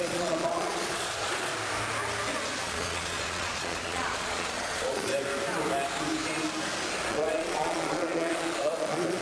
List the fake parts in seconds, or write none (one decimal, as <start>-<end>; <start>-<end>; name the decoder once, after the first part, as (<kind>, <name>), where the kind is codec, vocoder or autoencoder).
0.0-1.5 (vocoder, Vocos); 2.6-5.1; 7.1-9.2